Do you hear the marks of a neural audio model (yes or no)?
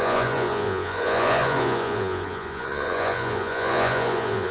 yes